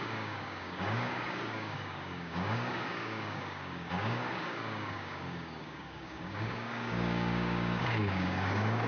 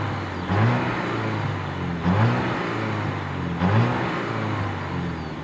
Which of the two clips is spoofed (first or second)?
first